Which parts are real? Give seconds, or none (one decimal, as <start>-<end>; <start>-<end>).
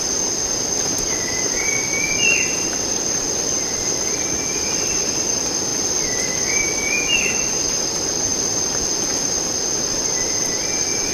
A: 0.0-11.1